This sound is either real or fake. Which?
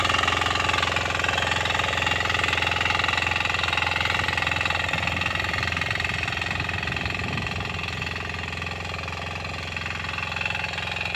real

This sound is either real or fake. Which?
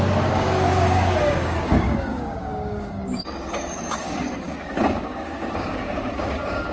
fake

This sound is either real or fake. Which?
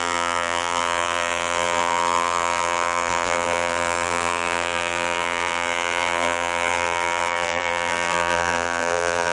fake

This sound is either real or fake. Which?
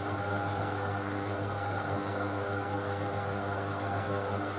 fake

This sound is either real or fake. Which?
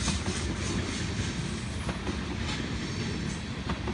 real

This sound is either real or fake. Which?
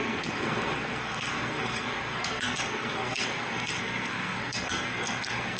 fake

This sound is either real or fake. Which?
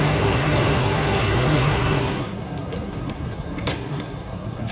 fake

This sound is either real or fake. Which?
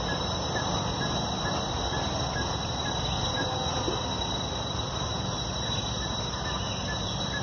real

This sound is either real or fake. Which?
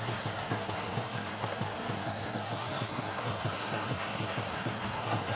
fake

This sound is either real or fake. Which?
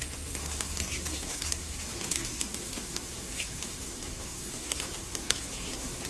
fake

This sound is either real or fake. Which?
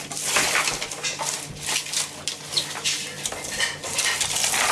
real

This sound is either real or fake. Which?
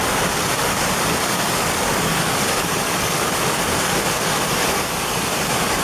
fake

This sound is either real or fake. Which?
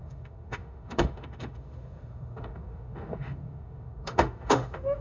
fake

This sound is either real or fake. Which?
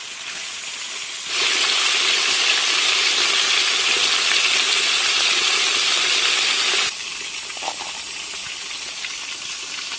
real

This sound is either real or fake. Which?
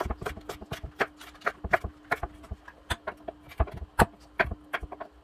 real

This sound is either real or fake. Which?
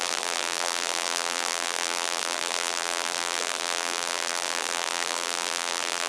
fake